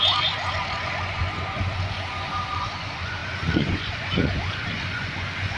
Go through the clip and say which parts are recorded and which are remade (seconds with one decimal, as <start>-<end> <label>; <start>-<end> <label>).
0.0-5.6 remade